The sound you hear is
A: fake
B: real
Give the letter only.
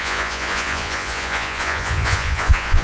A